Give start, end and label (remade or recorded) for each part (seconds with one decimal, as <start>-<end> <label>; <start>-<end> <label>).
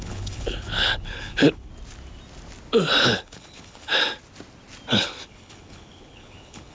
0.0-1.7 remade; 1.7-3.0 recorded; 3.0-3.9 remade; 3.9-4.9 recorded; 4.9-6.7 remade